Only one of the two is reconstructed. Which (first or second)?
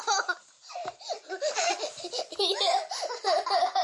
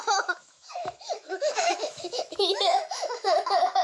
second